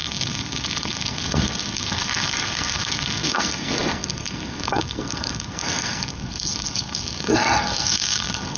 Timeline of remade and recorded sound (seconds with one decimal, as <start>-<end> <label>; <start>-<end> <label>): 0.0-8.6 remade